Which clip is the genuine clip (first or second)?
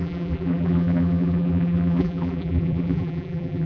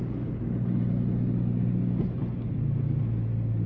second